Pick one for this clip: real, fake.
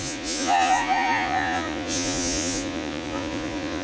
fake